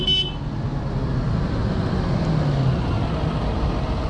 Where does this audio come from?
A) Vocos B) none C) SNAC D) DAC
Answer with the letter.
B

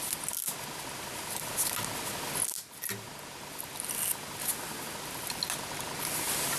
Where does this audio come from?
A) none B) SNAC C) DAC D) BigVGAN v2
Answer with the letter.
A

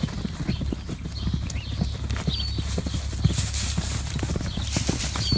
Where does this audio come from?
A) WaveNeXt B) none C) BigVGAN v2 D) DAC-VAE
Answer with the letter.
B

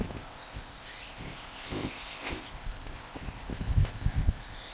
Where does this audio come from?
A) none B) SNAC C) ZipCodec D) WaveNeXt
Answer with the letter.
C